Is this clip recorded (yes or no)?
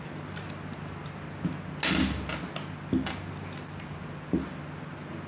yes